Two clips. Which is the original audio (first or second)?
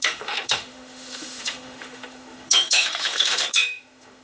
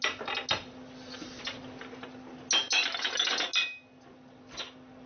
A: second